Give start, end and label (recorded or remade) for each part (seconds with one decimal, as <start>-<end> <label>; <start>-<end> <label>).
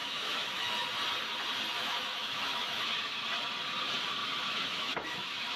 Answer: 0.0-0.7 remade; 0.7-1.8 recorded; 1.8-3.2 remade; 3.2-4.2 recorded; 4.2-5.6 remade